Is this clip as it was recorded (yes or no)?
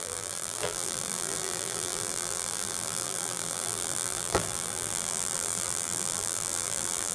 no